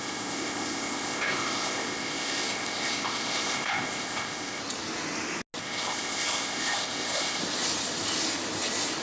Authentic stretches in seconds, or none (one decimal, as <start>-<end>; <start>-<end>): 4.6-5.6; 7.4-9.0